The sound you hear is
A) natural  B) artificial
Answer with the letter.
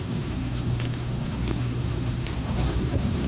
B